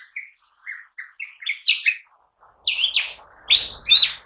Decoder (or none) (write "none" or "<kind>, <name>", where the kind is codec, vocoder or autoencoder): none